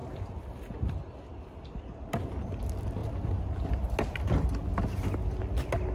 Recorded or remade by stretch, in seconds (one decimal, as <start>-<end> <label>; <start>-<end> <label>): 0.0-5.9 recorded

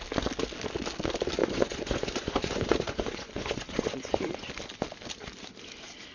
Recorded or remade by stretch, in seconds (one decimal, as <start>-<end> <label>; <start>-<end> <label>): 0.0-1.4 recorded; 1.4-4.5 remade; 4.5-6.1 recorded

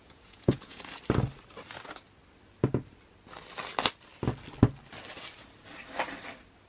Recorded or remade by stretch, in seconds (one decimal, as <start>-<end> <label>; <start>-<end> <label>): 0.0-0.8 remade; 0.8-6.7 recorded

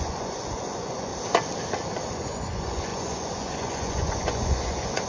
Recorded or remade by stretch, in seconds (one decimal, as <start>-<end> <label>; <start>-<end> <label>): 0.0-1.1 remade; 1.1-2.1 recorded; 2.1-5.1 remade

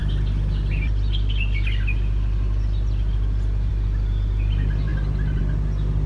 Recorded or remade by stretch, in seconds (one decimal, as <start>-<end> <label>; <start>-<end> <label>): 0.0-6.1 recorded